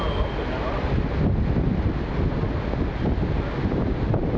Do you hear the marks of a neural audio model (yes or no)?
no